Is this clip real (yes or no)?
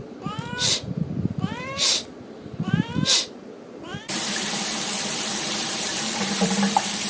no